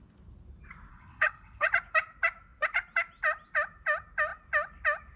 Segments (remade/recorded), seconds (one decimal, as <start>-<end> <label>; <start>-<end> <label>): 0.0-0.9 recorded; 0.9-1.7 remade; 1.7-5.2 recorded